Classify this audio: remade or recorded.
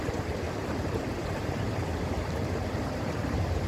remade